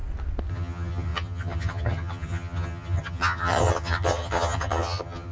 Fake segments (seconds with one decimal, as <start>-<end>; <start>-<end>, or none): 0.5-5.3